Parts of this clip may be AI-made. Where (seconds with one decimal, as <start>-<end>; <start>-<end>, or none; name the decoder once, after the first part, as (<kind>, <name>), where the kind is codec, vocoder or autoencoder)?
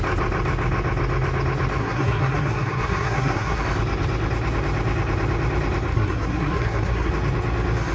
1.8-3.6 (codec, SNAC); 5.9-7.1